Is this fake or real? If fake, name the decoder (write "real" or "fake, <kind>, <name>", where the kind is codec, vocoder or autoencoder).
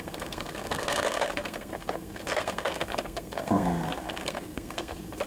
fake, codec, SNAC